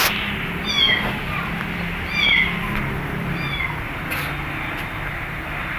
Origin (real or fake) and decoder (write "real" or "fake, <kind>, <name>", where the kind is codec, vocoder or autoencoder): real